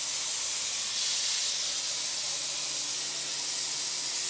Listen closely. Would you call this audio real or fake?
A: real